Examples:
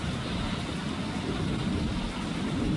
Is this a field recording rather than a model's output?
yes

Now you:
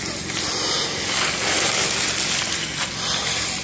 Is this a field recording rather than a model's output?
yes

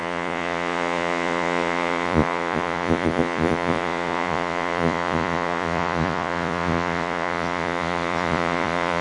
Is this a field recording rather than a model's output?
no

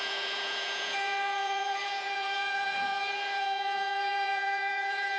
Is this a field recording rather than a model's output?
no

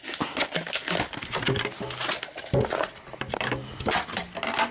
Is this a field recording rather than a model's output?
yes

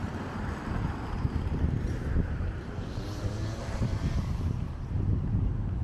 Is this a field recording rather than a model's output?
no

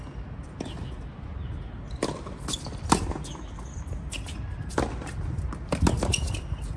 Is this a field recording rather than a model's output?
yes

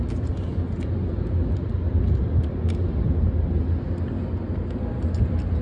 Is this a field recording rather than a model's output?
yes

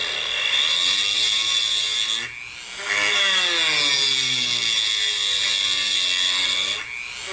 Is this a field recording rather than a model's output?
yes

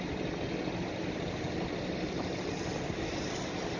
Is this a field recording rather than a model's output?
yes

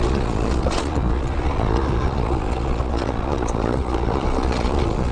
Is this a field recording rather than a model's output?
no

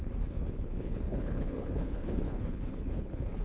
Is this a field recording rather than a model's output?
no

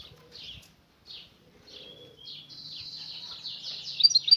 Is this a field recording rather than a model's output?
yes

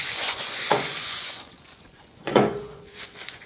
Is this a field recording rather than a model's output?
no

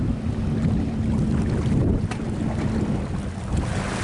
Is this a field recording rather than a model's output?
yes